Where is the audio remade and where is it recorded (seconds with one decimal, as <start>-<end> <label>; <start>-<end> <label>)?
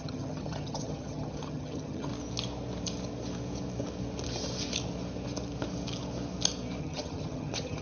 0.0-2.1 remade; 2.1-6.8 recorded; 6.8-7.8 remade